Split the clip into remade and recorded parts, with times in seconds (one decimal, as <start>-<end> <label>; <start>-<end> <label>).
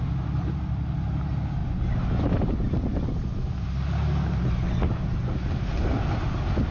0.0-6.7 recorded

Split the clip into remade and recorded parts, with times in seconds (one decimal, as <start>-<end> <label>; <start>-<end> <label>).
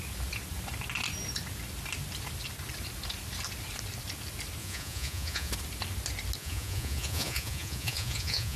0.0-4.6 recorded; 4.6-5.5 remade; 5.5-6.4 recorded; 6.4-8.6 remade